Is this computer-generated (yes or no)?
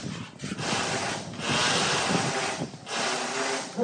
no